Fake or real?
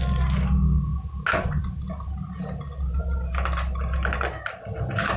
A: real